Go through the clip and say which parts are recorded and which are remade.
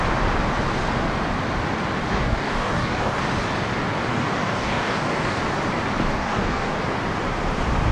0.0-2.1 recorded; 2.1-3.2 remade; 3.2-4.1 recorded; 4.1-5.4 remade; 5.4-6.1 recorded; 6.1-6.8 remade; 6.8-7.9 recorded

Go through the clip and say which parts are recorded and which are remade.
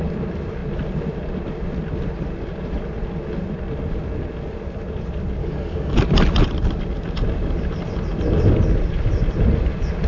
0.0-5.4 recorded; 5.4-6.0 remade; 6.0-10.1 recorded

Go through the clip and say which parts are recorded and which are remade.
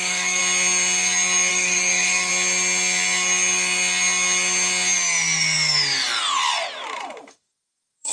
0.0-0.4 remade; 0.4-1.5 recorded; 1.5-2.3 remade; 2.3-7.2 recorded; 7.2-8.1 remade